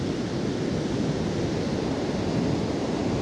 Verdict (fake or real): real